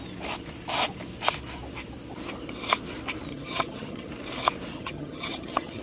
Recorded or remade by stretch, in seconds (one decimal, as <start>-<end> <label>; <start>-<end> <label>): 0.0-3.3 recorded; 3.3-4.1 remade; 4.1-4.7 recorded; 4.7-5.8 remade